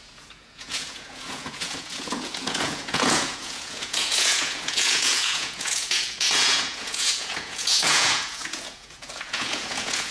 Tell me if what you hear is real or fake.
fake